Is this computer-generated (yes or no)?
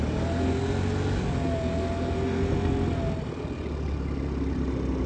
no